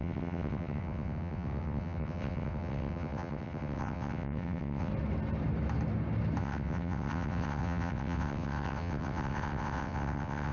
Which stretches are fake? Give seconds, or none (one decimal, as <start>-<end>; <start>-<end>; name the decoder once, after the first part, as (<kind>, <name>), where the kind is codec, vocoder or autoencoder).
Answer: 0.0-4.9 (vocoder, WaveNeXt); 6.4-10.5